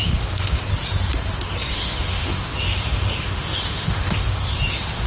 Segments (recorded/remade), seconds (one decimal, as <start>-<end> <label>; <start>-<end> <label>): 0.0-0.6 remade; 0.6-1.7 recorded; 1.7-5.1 remade